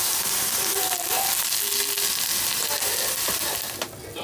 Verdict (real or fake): real